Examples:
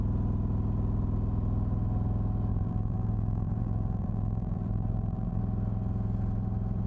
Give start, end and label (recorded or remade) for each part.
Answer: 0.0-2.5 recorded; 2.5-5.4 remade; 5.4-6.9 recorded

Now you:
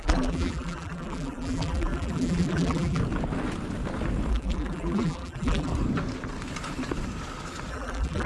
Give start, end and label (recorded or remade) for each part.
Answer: 0.0-3.0 remade; 3.0-4.3 recorded; 4.3-5.7 remade; 5.7-7.7 recorded; 7.7-8.3 remade

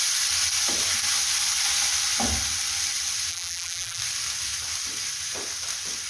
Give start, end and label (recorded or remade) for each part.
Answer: 0.0-3.3 recorded; 3.3-4.0 remade; 4.0-6.1 recorded

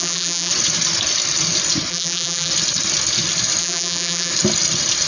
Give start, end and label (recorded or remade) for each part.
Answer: 0.0-0.5 remade; 0.5-1.9 recorded; 1.9-2.5 remade; 2.5-3.6 recorded; 3.6-4.3 remade; 4.3-5.1 recorded